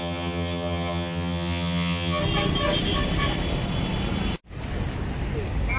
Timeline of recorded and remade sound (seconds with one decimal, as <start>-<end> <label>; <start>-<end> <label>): 0.0-2.2 remade; 2.2-5.8 recorded